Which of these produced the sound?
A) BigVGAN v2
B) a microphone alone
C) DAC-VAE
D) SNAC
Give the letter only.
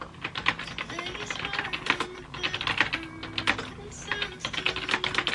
B